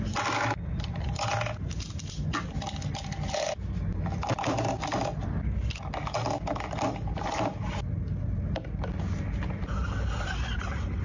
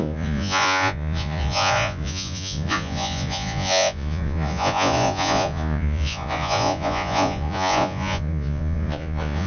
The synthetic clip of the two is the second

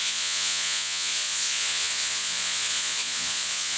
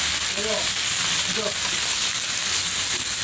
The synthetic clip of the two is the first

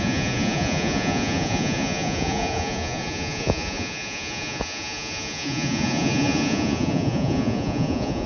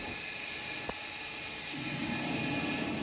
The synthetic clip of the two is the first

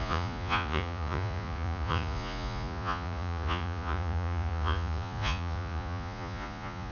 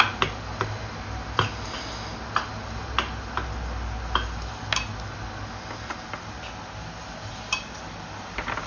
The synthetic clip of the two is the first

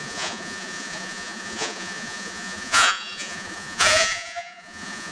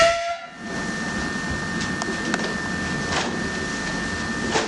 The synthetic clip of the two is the first